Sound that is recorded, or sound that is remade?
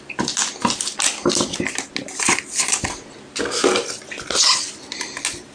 recorded